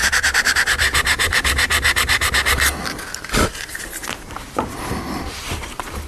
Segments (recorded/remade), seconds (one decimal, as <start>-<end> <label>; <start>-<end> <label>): 0.0-1.7 remade; 1.7-5.4 recorded; 5.4-6.1 remade